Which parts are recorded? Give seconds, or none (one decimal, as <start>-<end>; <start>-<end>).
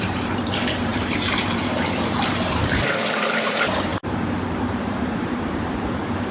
none